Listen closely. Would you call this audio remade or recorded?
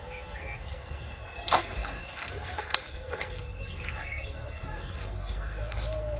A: remade